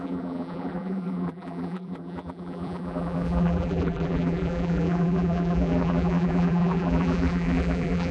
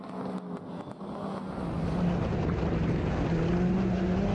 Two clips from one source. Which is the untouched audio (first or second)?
second